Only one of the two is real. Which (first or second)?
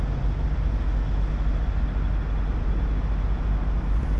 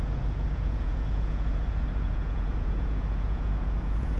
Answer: first